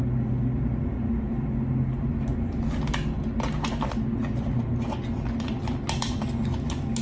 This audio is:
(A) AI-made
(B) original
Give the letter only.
B